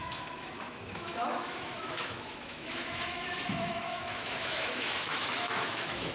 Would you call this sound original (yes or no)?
no